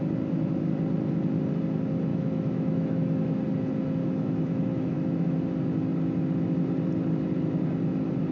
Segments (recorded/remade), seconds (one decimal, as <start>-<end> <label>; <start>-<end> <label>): 0.0-2.1 recorded; 2.1-3.4 remade; 3.4-4.0 recorded; 4.0-5.3 remade; 5.3-8.3 recorded